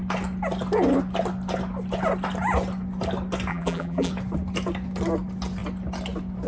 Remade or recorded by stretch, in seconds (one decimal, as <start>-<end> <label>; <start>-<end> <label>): 0.0-3.5 recorded; 3.5-4.1 remade; 4.1-6.5 recorded